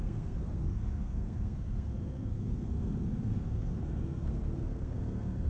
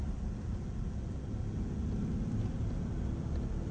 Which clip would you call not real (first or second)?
first